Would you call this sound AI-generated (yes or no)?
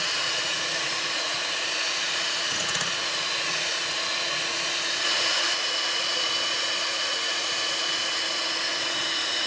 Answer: yes